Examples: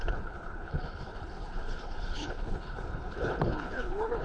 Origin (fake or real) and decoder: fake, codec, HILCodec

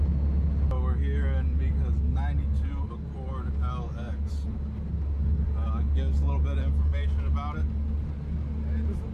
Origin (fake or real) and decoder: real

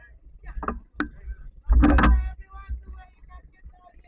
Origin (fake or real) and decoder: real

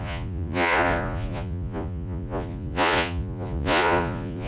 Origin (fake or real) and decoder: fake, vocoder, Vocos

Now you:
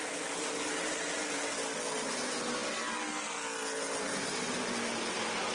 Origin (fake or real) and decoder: real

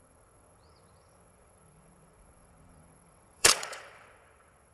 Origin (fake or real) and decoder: fake, vocoder, WaveNeXt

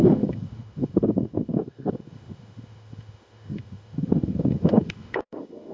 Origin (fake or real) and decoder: fake, autoencoder, DAC-VAE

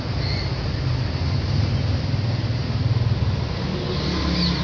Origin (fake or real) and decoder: real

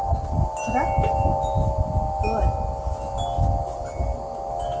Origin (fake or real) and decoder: real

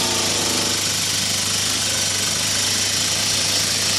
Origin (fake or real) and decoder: real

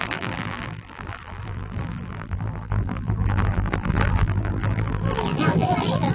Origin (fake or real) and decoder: fake, vocoder, BigVGAN v2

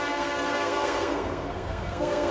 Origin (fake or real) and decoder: fake, codec, SNAC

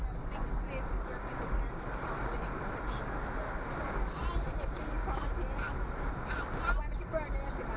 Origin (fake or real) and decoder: real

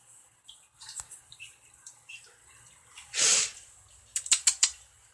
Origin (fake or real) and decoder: real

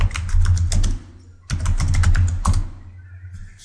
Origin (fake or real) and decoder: real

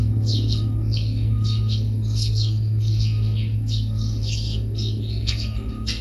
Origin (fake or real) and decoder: fake, codec, SNAC